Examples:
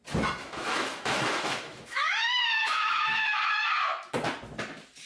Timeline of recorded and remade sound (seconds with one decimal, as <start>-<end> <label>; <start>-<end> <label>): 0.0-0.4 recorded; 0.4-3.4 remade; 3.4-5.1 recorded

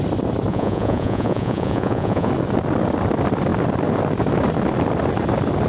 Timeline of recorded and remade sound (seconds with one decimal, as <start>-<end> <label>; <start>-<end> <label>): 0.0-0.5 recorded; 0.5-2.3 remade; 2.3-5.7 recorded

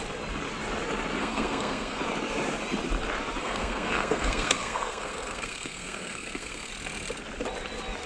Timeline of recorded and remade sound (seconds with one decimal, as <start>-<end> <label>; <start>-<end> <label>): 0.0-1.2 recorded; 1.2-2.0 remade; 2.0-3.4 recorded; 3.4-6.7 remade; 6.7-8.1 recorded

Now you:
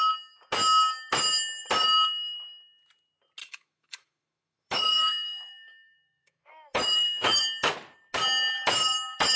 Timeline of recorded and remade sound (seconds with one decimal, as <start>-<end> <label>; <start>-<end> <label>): 0.0-3.4 recorded; 3.4-7.4 remade; 7.4-9.4 recorded

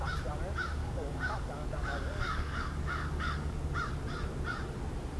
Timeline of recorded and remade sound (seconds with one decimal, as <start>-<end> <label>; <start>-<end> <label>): 0.0-0.8 recorded; 0.8-3.7 remade; 3.7-5.2 recorded

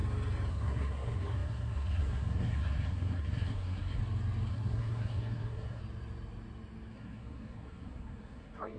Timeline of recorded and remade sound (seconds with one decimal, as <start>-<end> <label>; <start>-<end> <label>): 0.0-0.5 recorded; 0.5-4.0 remade; 4.0-4.5 recorded; 4.5-5.8 remade; 5.8-6.9 recorded; 6.9-8.8 remade

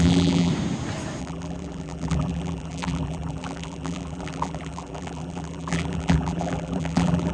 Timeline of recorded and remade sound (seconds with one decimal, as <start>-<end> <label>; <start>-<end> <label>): 0.0-0.5 remade; 0.5-1.2 recorded; 1.2-7.3 remade